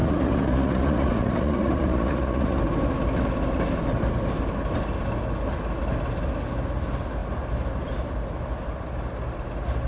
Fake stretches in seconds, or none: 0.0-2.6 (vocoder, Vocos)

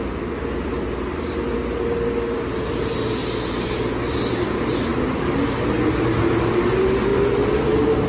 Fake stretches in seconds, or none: none

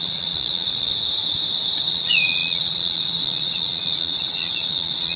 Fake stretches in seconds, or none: 0.0-0.9 (vocoder, Vocos); 1.9-5.2

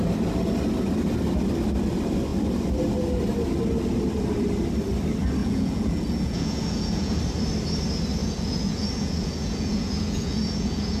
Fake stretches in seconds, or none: 5.4-7.2 (vocoder, Vocos); 8.2-11.0

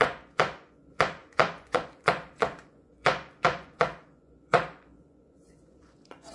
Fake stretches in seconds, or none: 0.0-6.3 (vocoder, Vocos)

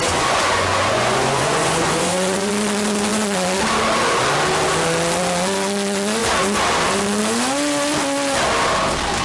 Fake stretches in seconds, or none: 0.0-2.5 (vocoder, Vocos)